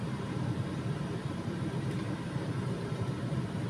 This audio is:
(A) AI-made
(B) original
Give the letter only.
A